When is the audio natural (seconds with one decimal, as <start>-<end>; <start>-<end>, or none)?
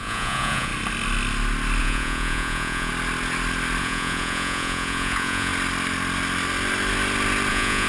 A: 0.7-1.8; 2.9-3.8; 5.5-7.5